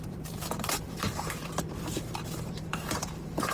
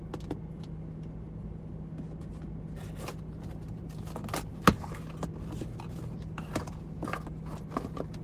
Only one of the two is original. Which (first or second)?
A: second